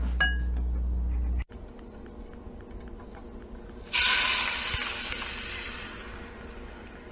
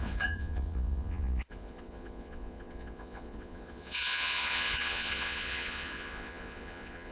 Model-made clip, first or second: second